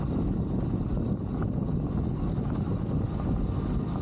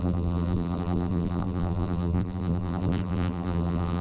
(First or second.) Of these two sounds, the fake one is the second